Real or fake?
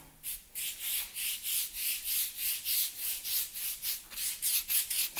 real